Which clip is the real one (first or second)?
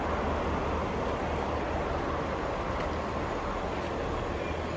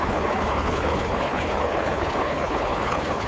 first